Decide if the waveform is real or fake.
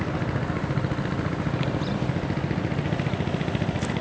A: real